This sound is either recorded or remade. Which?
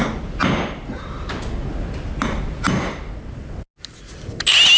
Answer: recorded